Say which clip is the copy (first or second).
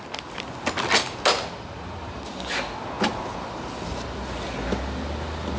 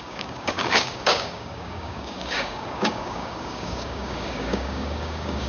second